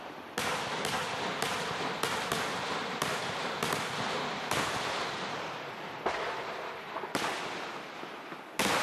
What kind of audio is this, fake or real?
real